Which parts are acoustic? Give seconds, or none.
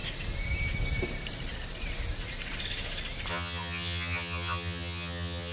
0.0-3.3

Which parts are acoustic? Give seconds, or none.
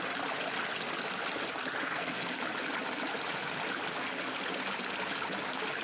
0.0-1.9; 2.4-5.8